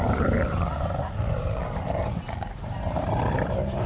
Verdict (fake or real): fake